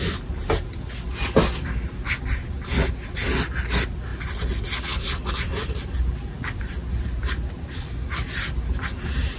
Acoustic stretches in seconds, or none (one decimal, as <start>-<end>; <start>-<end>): 0.0-9.4